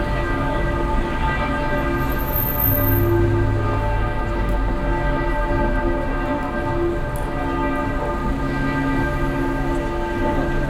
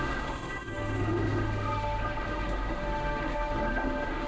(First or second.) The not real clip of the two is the second